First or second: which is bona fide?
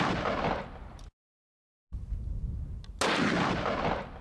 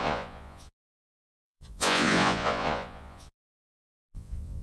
first